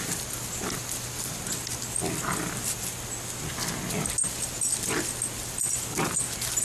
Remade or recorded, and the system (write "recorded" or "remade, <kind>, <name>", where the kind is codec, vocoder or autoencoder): recorded